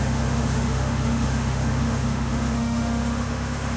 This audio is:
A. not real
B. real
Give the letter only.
A